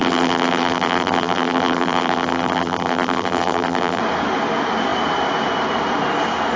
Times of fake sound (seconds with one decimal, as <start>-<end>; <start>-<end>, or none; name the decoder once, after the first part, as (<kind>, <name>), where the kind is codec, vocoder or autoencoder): 0.0-4.0 (vocoder, BigVGAN v2)

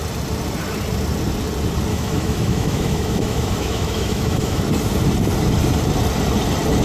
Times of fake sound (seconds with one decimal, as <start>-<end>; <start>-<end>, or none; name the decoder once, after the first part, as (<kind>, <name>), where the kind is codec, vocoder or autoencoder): 1.9-4.6 (autoencoder, DAC-VAE)

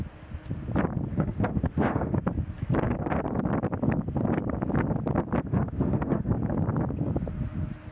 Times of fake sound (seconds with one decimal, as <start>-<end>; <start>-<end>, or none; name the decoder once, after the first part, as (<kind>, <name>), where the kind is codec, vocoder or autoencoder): 1.1-2.2 (autoencoder, DAC-VAE); 5.5-6.3

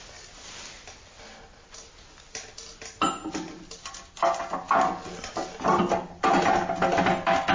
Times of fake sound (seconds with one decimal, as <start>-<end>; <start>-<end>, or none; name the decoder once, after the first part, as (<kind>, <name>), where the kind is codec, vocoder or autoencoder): none

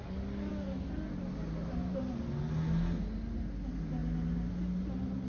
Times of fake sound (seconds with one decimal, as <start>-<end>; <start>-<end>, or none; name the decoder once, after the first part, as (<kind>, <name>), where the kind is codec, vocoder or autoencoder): none